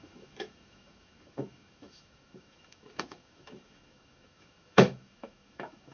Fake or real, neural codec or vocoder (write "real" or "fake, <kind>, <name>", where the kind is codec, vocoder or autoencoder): fake, autoencoder, DAC-VAE